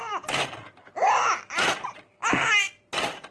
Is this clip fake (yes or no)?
no